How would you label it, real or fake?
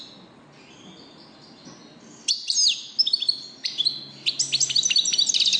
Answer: real